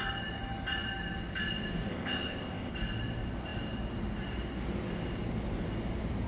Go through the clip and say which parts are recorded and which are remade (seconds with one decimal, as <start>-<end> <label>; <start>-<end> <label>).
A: 0.0-1.9 recorded; 1.9-2.7 remade; 2.7-6.3 recorded

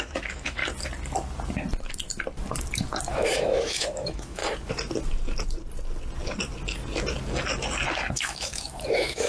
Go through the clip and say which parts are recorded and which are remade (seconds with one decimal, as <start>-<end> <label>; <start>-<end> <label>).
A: 0.0-0.6 remade; 0.6-3.1 recorded; 3.1-4.4 remade; 4.4-8.1 recorded; 8.1-9.3 remade

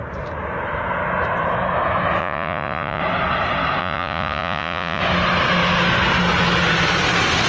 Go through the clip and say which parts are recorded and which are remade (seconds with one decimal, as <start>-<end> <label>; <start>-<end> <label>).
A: 0.0-2.2 recorded; 2.2-3.0 remade; 3.0-3.8 recorded; 3.8-5.0 remade; 5.0-7.5 recorded

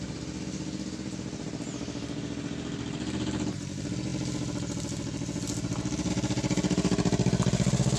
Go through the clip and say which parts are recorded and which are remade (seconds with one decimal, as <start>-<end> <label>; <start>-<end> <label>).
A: 0.0-8.0 recorded

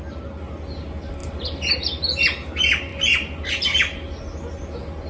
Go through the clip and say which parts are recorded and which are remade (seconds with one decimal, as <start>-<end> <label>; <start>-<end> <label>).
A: 0.0-5.1 recorded

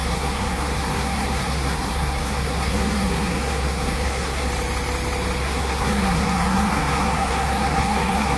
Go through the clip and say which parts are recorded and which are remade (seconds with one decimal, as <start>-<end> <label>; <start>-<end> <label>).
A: 0.0-4.5 remade; 4.5-5.4 recorded; 5.4-8.4 remade

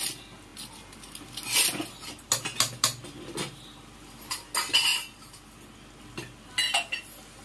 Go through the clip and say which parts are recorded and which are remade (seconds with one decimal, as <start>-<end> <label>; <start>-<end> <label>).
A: 0.0-7.4 recorded